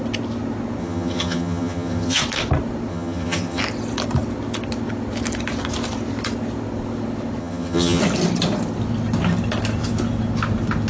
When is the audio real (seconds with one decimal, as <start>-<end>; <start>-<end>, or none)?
0.0-0.8; 2.2-2.9; 3.6-7.4; 8.0-10.9